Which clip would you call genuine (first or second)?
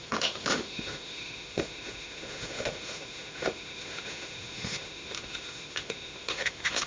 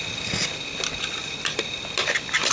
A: second